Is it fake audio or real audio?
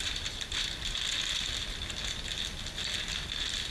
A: real